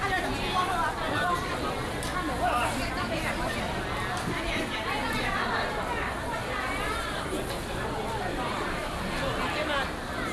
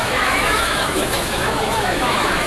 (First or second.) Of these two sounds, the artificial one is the second